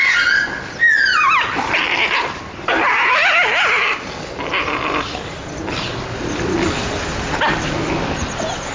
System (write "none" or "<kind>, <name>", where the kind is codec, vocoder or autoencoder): none